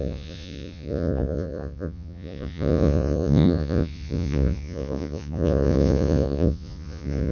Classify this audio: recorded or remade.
remade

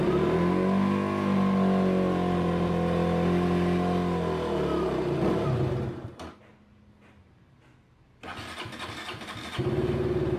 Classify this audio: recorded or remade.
recorded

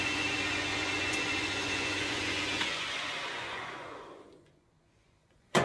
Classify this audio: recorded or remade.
remade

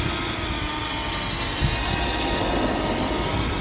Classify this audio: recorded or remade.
recorded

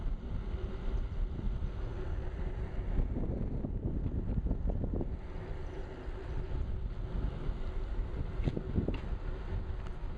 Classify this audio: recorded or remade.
recorded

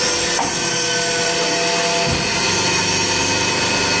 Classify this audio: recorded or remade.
recorded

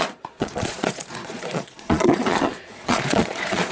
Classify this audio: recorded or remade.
remade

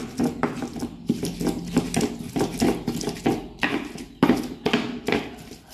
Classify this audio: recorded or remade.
recorded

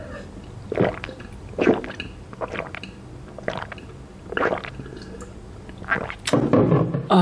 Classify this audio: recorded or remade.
recorded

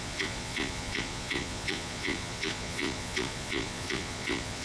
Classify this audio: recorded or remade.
remade